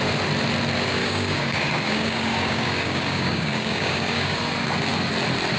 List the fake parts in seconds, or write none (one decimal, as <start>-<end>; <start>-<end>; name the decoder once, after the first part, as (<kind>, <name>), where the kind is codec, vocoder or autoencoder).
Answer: 1.0-4.4 (codec, DAC)